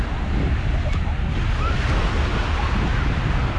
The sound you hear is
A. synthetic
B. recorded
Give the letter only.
B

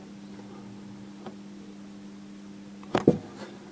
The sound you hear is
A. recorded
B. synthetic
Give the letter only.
A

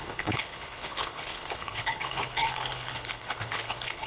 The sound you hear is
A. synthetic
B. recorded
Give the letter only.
A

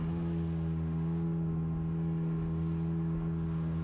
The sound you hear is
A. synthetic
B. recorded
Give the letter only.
B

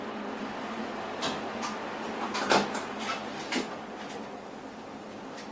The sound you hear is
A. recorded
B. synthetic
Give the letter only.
A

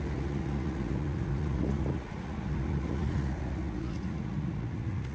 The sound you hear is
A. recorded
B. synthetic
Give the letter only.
B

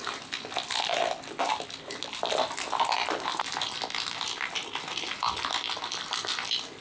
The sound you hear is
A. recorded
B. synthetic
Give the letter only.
A